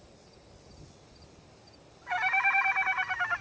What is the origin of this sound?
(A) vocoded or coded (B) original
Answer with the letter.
B